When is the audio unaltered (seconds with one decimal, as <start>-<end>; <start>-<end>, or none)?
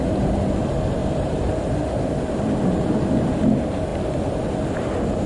0.0-1.0; 1.5-5.3